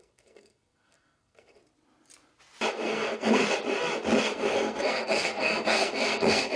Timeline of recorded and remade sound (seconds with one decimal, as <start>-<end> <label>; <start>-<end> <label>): 0.0-1.6 remade; 1.6-2.7 recorded; 2.7-3.4 remade; 3.4-4.2 recorded; 4.2-6.6 remade